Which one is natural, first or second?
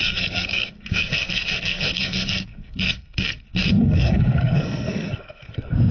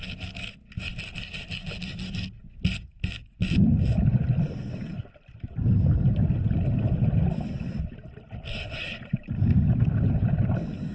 second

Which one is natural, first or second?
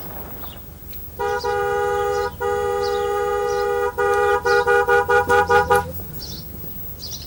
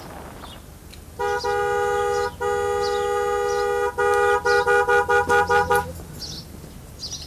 second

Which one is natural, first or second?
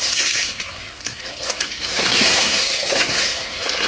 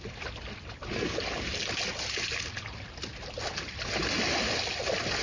second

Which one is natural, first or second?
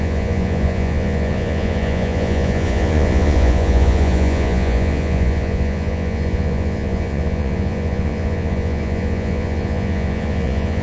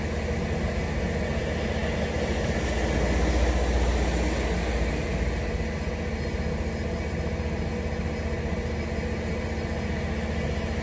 second